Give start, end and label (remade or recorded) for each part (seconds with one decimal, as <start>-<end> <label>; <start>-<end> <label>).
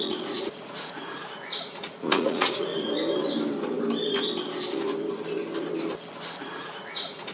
0.0-2.7 remade; 2.7-6.4 recorded; 6.4-7.3 remade